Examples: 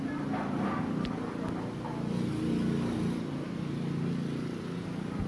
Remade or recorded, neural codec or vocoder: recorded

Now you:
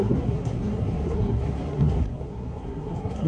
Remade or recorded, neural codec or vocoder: remade, codec, SNAC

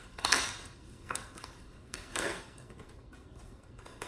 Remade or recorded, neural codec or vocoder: remade, codec, SNAC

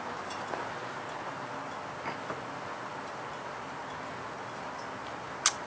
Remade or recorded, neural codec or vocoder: recorded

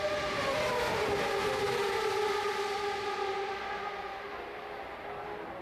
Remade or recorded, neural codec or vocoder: recorded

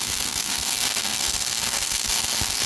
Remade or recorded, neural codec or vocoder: remade, codec, SNAC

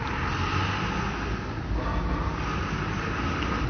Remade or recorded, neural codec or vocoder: recorded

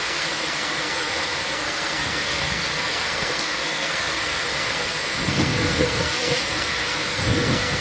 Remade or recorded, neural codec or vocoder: remade, codec, SNAC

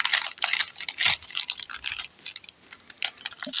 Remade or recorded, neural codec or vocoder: recorded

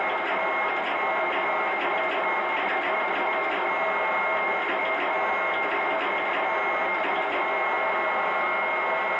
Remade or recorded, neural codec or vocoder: recorded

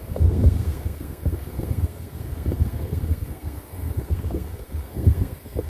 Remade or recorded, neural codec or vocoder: remade, codec, SNAC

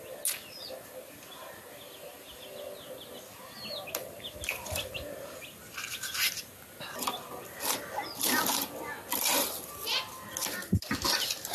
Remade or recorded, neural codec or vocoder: recorded